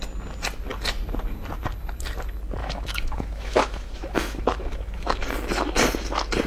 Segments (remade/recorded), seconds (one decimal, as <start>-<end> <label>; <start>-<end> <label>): 0.0-2.6 recorded; 2.6-5.2 remade; 5.2-6.5 recorded